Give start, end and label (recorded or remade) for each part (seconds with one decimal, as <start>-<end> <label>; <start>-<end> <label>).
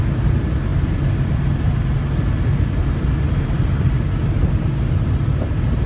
0.0-5.9 recorded